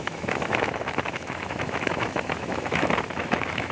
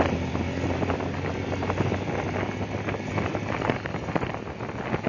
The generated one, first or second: first